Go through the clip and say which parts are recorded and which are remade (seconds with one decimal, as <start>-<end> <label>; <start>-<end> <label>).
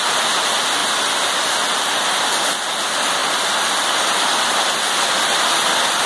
0.0-6.1 recorded